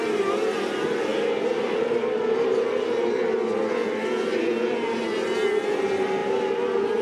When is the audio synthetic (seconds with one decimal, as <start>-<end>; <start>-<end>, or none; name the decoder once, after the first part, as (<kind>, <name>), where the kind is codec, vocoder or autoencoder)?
1.1-3.2 (vocoder, BigVGAN v2); 3.8-4.5